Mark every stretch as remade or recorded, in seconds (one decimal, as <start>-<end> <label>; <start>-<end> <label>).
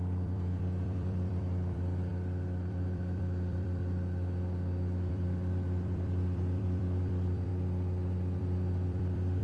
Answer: 0.0-2.1 remade; 2.1-2.7 recorded; 2.7-3.8 remade; 3.8-5.1 recorded; 5.1-7.5 remade; 7.5-8.4 recorded; 8.4-9.4 remade